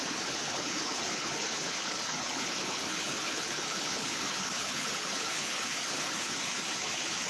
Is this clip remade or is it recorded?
remade